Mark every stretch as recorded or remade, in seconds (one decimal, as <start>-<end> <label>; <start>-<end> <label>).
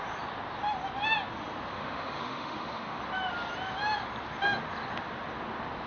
0.0-1.7 recorded; 1.7-3.0 remade; 3.0-5.9 recorded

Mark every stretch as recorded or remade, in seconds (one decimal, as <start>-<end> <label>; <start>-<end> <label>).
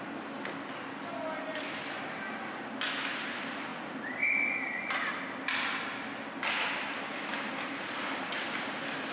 0.0-9.1 recorded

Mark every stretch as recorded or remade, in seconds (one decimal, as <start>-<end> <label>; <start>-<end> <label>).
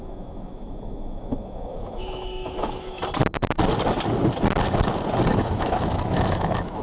0.0-3.0 remade; 3.0-5.3 recorded; 5.3-6.8 remade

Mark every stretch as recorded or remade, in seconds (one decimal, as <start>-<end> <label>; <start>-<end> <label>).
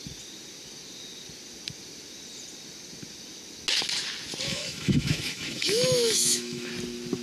0.0-4.5 recorded; 4.5-6.7 remade; 6.7-7.2 recorded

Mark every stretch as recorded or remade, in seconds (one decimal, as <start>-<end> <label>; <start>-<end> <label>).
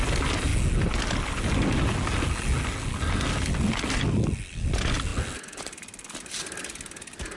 0.0-7.4 recorded